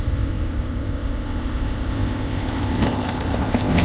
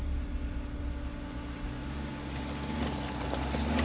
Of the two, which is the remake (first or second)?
first